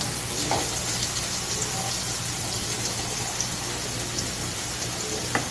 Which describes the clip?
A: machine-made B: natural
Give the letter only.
B